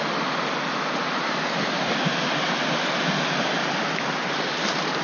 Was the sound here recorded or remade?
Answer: recorded